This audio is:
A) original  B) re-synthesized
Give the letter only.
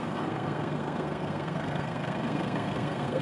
B